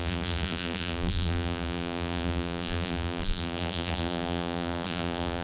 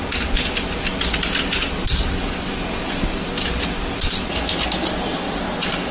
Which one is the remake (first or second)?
first